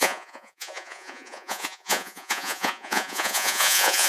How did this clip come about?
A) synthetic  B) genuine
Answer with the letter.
A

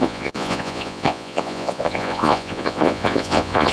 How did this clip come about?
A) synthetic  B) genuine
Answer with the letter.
A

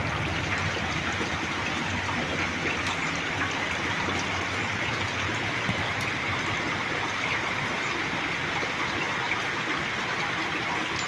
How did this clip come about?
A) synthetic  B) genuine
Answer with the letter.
B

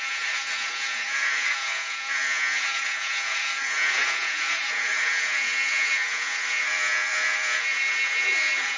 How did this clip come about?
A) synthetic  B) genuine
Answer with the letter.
A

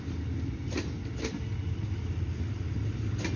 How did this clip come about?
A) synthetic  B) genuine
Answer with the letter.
B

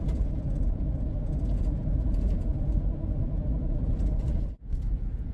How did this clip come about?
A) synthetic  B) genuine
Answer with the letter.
A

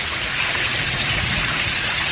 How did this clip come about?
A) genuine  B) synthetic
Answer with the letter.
B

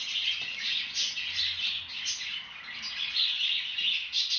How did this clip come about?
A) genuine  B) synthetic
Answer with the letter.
A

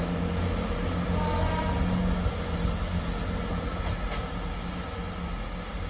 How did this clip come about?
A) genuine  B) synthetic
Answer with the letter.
A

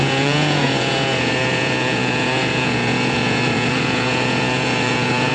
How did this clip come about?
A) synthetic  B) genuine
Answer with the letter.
A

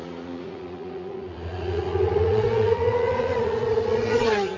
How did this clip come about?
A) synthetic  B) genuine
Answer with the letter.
A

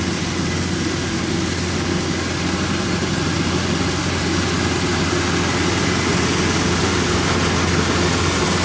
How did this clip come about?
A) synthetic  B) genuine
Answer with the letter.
B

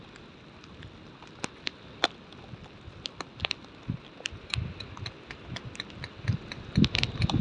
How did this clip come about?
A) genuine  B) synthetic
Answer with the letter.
A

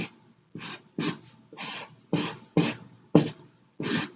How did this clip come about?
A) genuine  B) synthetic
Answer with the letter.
A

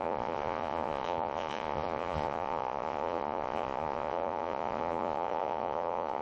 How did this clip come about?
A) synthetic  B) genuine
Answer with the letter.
A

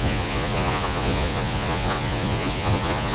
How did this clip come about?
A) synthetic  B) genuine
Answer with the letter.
A